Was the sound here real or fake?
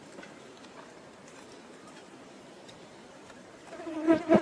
fake